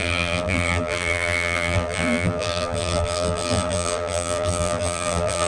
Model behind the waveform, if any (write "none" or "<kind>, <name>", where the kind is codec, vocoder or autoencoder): vocoder, BigVGAN v2